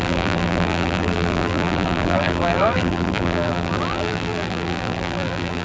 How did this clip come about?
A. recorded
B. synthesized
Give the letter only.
B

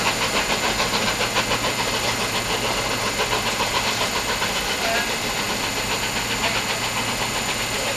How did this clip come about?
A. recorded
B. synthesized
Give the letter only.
A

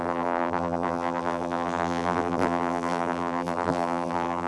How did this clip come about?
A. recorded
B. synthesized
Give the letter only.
B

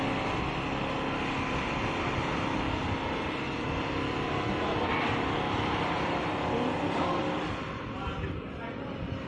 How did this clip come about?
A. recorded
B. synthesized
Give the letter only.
A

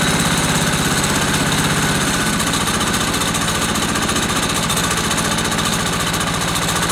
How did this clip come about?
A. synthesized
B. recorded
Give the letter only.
B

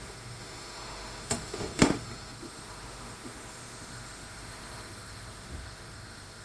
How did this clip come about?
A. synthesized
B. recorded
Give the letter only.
A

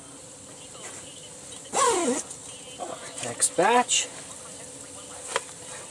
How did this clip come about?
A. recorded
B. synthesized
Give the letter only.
A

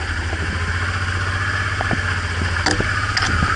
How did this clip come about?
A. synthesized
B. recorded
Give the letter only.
B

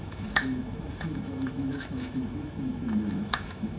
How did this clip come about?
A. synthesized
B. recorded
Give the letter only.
A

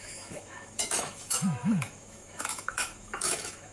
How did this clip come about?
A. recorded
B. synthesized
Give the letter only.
B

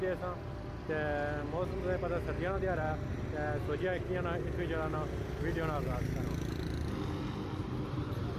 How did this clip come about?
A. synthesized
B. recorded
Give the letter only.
B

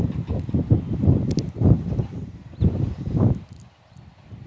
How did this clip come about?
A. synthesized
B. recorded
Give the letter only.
B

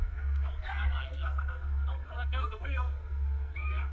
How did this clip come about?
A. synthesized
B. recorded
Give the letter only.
A